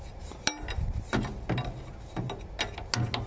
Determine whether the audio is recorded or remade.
recorded